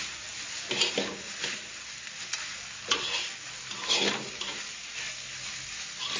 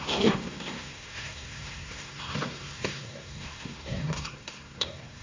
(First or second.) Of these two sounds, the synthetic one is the second